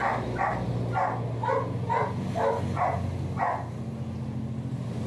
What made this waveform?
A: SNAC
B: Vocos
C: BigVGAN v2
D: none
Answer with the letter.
D